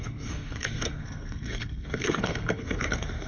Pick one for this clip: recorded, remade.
remade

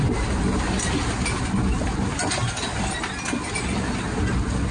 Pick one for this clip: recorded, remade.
recorded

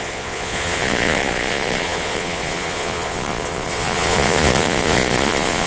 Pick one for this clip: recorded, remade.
remade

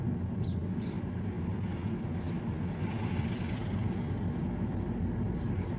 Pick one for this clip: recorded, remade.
recorded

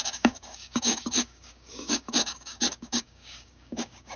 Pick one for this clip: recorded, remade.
remade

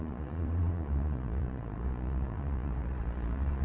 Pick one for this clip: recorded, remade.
remade